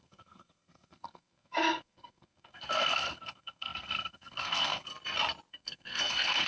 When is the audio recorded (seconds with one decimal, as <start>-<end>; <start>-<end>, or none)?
4.9-5.5